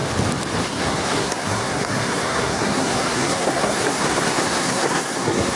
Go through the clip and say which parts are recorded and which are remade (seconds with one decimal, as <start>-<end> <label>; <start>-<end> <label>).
0.0-0.6 recorded; 0.6-5.6 remade